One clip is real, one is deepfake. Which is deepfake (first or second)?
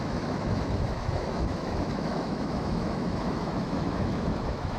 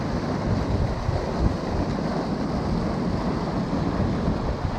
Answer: first